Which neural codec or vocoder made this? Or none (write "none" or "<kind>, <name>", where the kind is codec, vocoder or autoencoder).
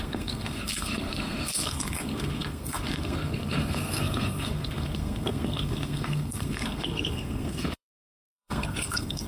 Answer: codec, SNAC